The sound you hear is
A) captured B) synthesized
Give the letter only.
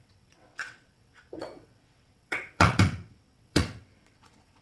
B